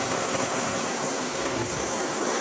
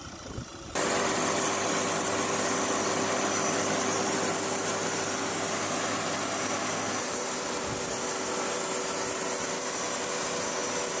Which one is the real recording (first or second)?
second